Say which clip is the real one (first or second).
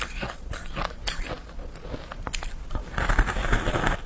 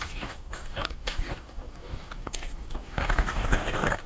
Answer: first